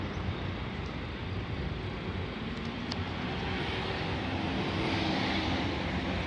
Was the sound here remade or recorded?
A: recorded